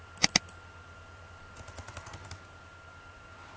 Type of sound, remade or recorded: recorded